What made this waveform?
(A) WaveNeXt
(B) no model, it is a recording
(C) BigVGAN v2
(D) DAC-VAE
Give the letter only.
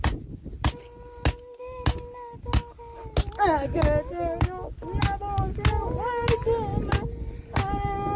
B